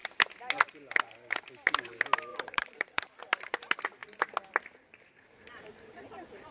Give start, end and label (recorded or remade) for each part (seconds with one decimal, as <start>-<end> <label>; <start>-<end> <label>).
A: 0.0-2.3 recorded; 2.3-3.0 remade; 3.0-6.5 recorded